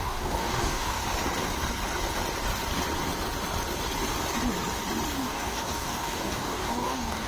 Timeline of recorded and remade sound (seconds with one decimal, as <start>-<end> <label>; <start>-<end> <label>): 0.0-1.0 remade; 1.0-5.1 recorded; 5.1-7.3 remade